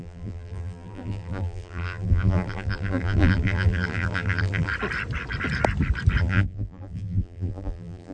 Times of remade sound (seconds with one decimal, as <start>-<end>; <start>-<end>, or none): 0.0-4.7; 6.2-8.1